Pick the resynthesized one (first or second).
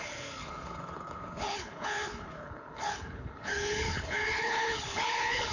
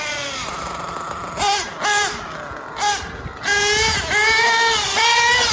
first